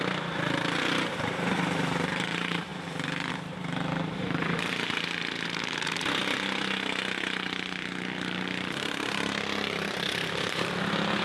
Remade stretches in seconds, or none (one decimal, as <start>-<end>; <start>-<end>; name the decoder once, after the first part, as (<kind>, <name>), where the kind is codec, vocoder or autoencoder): 0.0-2.7 (vocoder, BigVGAN v2); 3.3-6.2; 7.2-11.2